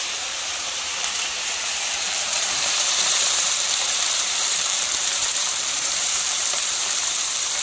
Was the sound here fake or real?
fake